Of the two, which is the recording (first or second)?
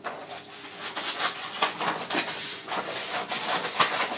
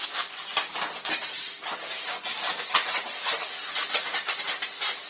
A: second